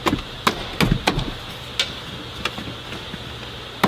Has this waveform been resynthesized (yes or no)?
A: no